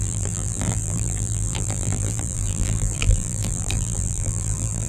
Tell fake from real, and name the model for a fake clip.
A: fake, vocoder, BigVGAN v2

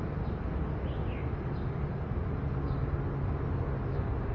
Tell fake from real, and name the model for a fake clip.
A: real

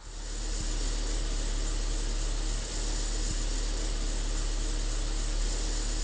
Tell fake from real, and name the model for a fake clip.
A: real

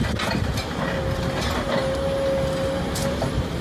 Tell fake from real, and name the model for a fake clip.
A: real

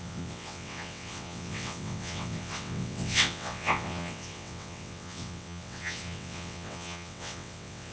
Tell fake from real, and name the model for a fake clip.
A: fake, vocoder, WaveNeXt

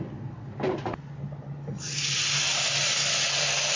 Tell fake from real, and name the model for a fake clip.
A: real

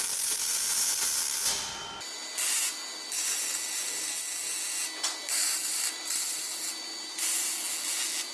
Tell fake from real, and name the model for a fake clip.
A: real